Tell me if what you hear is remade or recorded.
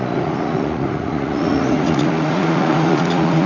remade